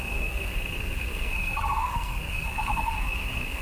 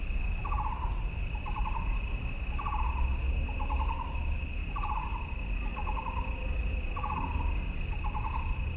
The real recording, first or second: second